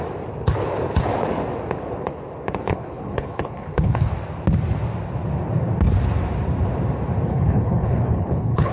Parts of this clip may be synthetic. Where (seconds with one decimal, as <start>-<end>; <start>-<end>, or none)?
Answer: 2.7-4.1; 7.3-8.7